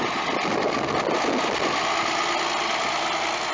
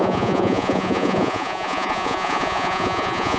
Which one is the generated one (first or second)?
second